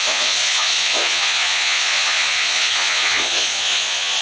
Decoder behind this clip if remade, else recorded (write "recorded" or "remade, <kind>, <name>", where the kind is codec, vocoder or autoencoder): remade, vocoder, Vocos